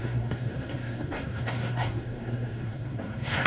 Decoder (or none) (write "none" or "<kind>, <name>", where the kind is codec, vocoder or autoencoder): codec, SNAC